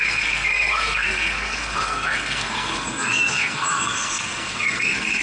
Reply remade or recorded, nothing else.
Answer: remade